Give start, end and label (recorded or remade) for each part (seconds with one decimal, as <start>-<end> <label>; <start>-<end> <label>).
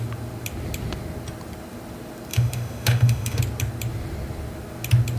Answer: 0.0-2.3 recorded; 2.3-3.4 remade; 3.4-5.2 recorded